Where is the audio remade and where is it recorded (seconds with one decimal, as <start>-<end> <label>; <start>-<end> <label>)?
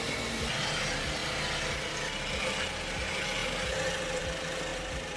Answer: 0.0-3.4 recorded; 3.4-4.2 remade; 4.2-4.7 recorded; 4.7-5.2 remade